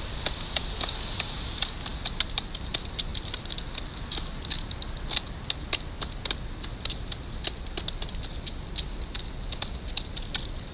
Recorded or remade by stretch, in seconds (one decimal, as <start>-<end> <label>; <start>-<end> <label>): 0.0-10.7 recorded